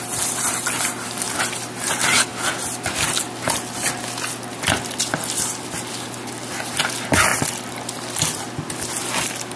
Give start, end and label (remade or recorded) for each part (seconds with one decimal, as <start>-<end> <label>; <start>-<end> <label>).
0.0-9.6 recorded